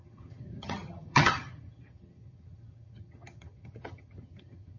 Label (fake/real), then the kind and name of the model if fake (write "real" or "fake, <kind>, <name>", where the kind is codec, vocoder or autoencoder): fake, vocoder, HiFi-GAN